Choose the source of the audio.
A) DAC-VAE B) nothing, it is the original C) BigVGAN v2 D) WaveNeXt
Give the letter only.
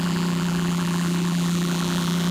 C